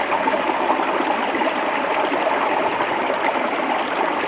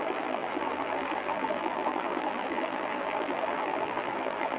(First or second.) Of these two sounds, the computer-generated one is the second